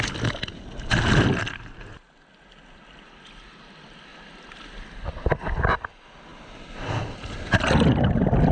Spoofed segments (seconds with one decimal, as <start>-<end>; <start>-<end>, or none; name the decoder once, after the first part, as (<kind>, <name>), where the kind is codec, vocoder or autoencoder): none